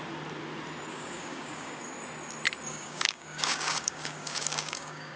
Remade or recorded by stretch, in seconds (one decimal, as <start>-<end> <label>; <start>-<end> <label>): 0.0-0.9 recorded; 0.9-1.8 remade; 1.8-2.7 recorded; 2.7-5.2 remade